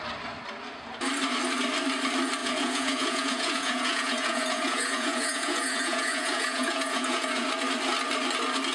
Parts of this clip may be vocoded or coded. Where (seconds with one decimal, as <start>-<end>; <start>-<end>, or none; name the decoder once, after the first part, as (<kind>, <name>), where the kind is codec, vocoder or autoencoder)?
2.4-7.5 (vocoder, Vocos)